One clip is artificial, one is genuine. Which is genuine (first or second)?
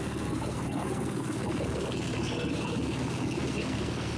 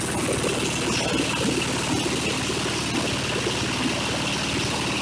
second